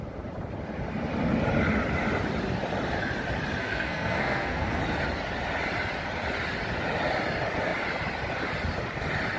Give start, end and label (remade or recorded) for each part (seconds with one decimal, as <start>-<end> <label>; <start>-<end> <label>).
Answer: 0.0-3.6 recorded; 3.6-4.8 remade; 4.8-9.4 recorded

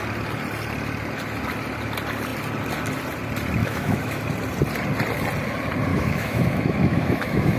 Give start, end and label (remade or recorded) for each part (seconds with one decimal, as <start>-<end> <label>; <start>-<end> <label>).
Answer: 0.0-3.6 recorded; 3.6-4.2 remade; 4.2-5.9 recorded; 5.9-7.6 remade

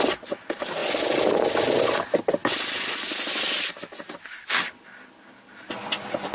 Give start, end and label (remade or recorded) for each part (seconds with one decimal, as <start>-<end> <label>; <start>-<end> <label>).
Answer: 0.0-6.3 recorded

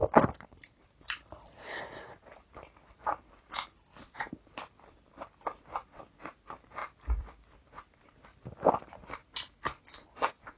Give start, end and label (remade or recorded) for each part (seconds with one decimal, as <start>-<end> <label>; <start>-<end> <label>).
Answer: 0.0-1.8 remade; 1.8-3.9 recorded; 3.9-5.6 remade; 5.6-6.8 recorded; 6.8-8.9 remade; 8.9-10.6 recorded